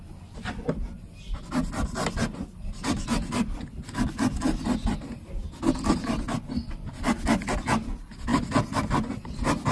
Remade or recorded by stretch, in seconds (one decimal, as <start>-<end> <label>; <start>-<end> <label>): 0.0-9.7 recorded